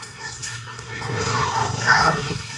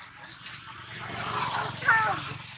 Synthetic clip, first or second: first